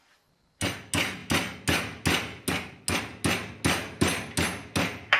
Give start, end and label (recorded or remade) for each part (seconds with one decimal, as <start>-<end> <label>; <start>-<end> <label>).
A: 0.0-5.2 recorded